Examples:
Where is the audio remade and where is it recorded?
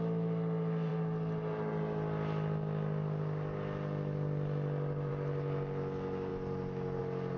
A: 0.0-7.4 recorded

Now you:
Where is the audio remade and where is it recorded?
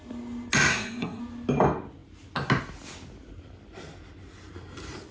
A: 0.0-0.7 recorded; 0.7-1.2 remade; 1.2-5.1 recorded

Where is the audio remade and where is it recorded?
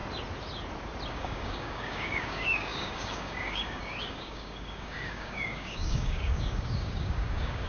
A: 0.0-1.1 recorded; 1.1-7.7 remade